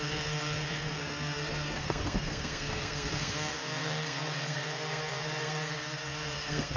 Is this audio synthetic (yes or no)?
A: yes